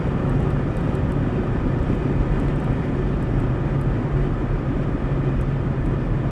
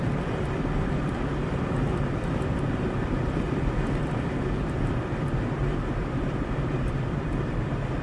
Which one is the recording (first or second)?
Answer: first